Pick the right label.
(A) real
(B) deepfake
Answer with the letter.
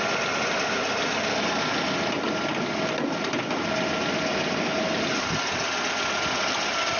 A